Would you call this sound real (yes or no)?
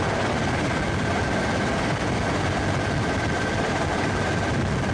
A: yes